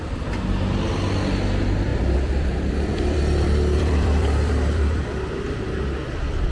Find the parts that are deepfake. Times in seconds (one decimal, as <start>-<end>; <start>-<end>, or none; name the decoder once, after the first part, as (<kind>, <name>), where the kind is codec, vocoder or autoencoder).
1.9-5.0 (vocoder, BigVGAN v2)